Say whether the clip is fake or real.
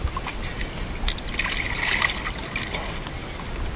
real